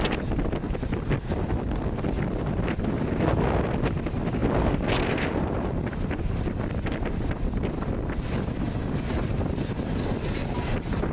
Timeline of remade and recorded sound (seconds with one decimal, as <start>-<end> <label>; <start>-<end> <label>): 0.0-11.1 recorded